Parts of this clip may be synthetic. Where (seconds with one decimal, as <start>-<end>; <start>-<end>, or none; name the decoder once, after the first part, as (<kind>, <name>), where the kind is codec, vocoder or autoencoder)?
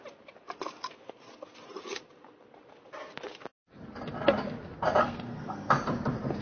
5.0-5.7 (codec, SNAC)